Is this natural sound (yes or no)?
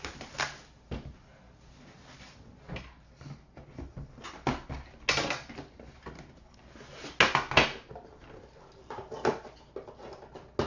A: yes